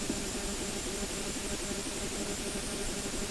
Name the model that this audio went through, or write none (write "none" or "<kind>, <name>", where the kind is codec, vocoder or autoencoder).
vocoder, BigVGAN v2